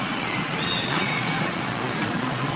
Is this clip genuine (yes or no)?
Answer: no